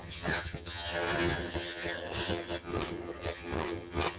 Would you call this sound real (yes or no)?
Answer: no